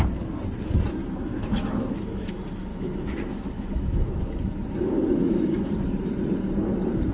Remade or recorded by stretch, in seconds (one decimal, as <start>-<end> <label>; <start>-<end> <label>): 0.0-1.0 recorded; 1.0-2.3 remade; 2.3-2.7 recorded; 2.7-5.7 remade; 5.7-7.1 recorded